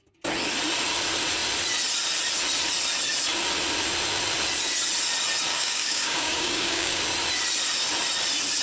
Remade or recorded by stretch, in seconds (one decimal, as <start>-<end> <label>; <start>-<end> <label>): 0.0-5.5 recorded; 5.5-7.0 remade; 7.0-8.6 recorded